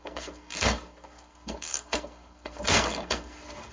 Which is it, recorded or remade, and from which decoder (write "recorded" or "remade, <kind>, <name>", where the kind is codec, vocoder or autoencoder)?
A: remade, codec, SNAC